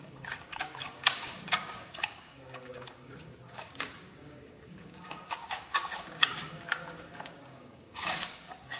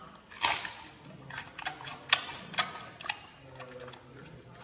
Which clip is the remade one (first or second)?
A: first